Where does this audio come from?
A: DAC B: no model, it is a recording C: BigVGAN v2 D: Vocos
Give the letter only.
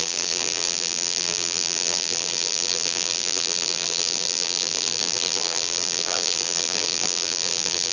C